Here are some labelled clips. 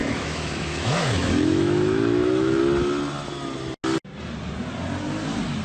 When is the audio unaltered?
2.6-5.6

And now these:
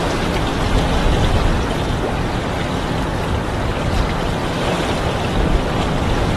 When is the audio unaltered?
0.0-6.4

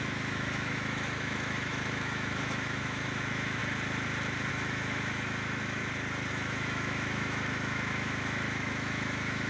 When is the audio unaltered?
3.6-4.5; 5.8-6.3